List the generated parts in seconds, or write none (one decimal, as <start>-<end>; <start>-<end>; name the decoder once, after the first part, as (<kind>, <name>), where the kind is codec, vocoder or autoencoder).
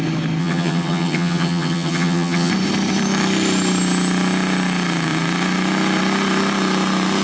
0.4-2.5 (vocoder, HiFi-GAN)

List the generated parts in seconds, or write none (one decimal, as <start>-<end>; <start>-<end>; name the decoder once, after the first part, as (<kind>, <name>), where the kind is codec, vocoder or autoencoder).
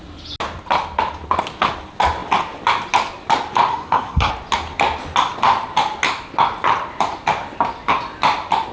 3.7-4.3 (codec, SNAC)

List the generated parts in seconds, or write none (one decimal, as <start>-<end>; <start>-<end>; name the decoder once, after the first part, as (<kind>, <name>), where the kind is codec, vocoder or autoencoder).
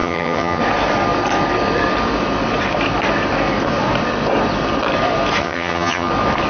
0.0-0.6 (vocoder, HiFi-GAN); 5.4-6.1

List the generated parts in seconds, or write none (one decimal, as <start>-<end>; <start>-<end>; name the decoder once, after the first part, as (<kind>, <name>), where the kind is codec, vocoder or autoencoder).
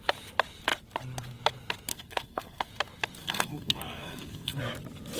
1.9-2.7 (codec, SNAC); 3.2-4.6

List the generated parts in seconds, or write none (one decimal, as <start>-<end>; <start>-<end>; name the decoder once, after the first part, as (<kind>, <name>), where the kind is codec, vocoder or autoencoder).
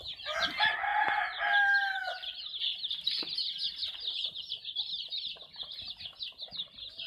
0.9-2.6 (vocoder, BigVGAN v2)